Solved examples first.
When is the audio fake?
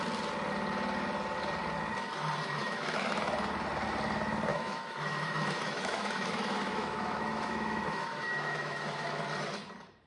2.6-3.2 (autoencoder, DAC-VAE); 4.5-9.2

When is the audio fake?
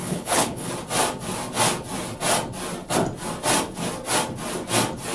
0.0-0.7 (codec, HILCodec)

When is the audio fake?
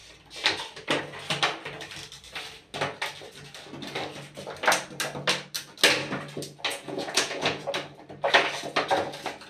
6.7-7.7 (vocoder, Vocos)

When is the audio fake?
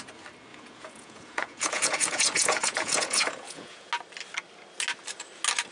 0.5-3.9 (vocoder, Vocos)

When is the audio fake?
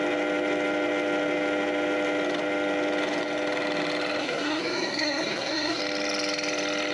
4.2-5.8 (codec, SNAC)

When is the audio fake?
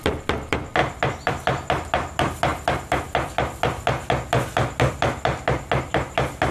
none